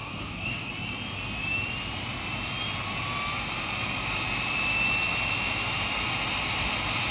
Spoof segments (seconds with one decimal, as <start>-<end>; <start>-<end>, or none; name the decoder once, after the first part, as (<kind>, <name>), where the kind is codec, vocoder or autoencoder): 0.0-0.7 (codec, DAC)